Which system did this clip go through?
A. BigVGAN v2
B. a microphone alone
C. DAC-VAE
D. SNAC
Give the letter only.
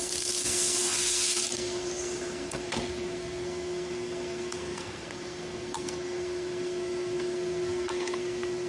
D